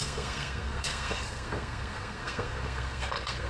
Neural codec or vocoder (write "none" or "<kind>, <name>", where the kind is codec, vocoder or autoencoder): codec, SNAC